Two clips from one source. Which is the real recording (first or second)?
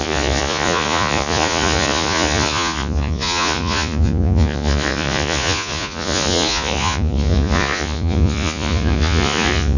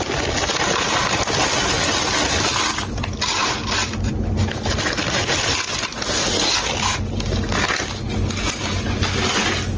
second